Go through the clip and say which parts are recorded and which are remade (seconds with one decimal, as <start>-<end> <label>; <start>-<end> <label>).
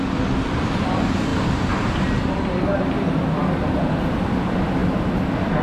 0.0-5.6 recorded